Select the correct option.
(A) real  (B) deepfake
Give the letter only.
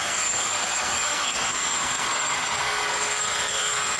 B